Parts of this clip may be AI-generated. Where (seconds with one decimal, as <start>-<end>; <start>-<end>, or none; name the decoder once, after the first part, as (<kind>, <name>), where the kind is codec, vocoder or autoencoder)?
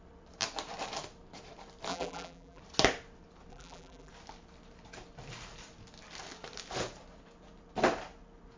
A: 1.9-2.6 (vocoder, BigVGAN v2); 3.5-4.1